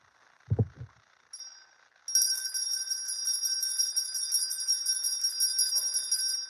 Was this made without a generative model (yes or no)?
yes